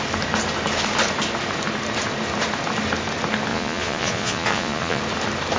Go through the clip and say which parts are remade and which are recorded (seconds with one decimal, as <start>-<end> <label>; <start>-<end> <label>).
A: 0.0-3.5 recorded; 3.5-5.0 remade; 5.0-5.6 recorded